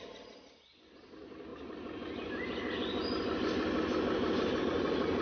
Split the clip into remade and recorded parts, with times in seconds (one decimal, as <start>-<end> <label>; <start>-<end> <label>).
0.0-5.2 recorded